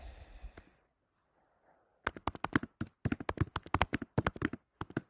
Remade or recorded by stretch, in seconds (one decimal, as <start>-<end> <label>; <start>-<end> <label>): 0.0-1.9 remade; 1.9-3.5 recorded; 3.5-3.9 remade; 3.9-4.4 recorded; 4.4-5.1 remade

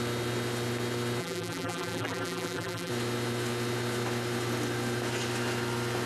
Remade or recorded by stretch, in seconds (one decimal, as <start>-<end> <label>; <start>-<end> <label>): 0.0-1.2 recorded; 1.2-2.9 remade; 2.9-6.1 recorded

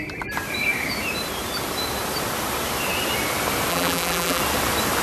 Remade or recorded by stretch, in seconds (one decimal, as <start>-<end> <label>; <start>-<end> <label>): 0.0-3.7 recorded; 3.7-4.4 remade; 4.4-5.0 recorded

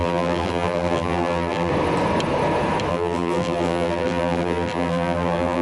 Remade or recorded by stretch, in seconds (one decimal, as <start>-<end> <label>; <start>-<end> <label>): 0.0-1.7 remade; 1.7-2.9 recorded; 2.9-5.6 remade